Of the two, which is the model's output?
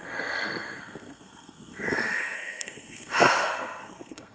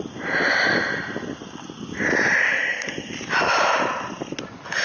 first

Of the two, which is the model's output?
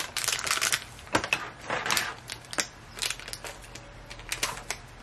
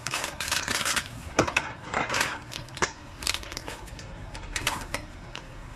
second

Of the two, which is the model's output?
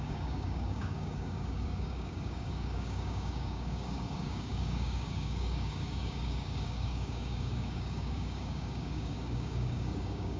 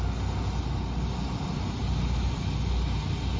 first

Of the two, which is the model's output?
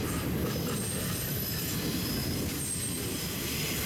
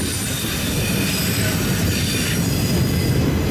first